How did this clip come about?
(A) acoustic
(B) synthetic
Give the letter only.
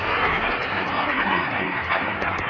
B